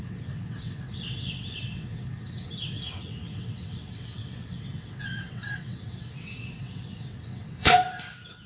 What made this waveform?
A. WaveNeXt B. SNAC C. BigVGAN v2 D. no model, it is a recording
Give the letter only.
A